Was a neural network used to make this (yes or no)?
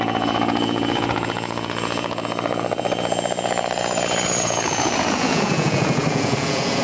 yes